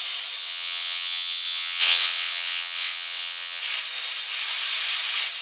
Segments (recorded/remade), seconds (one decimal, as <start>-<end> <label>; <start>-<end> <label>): 0.0-0.4 recorded; 0.4-3.6 remade; 3.6-5.4 recorded